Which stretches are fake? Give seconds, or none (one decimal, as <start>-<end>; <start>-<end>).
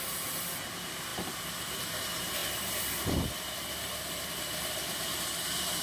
1.1-1.8; 2.4-5.2